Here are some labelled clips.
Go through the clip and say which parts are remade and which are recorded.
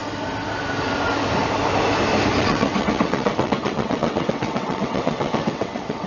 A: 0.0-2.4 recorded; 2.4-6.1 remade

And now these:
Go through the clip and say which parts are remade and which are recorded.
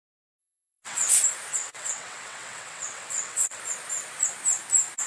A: 0.0-0.4 recorded; 0.4-1.1 remade; 1.1-1.5 recorded; 1.5-3.6 remade; 3.6-5.1 recorded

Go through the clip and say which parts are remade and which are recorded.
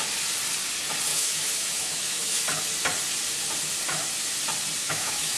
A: 0.0-1.1 recorded; 1.1-2.4 remade; 2.4-4.8 recorded; 4.8-5.4 remade